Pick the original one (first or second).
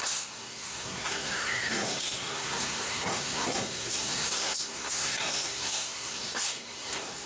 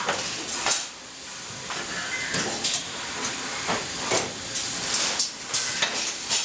second